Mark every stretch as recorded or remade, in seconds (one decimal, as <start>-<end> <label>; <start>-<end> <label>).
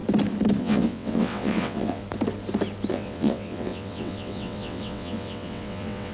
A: 0.0-0.6 recorded; 0.6-2.0 remade; 2.0-2.9 recorded; 2.9-6.1 remade